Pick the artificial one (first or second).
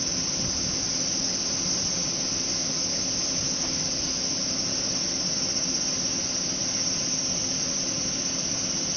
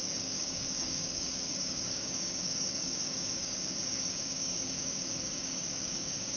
second